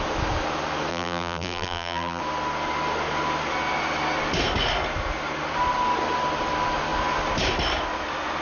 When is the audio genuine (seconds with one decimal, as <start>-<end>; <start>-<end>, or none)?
0.0-0.9; 2.2-8.4